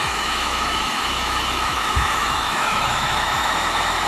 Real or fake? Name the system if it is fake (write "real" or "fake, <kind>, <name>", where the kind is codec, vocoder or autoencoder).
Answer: fake, autoencoder, DAC-VAE